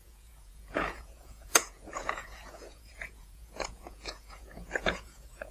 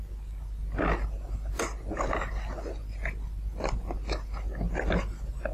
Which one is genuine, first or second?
second